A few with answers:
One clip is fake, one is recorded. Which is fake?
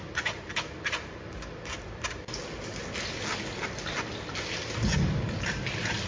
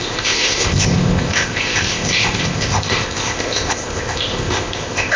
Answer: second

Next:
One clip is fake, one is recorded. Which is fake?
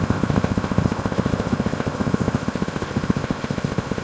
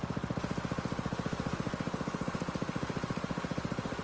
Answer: first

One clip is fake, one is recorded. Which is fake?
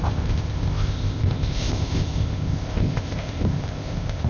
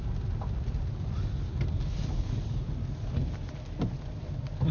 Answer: first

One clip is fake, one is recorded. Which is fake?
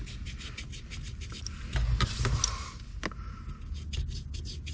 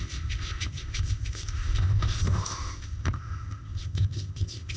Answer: second